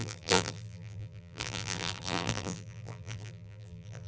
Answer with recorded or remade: remade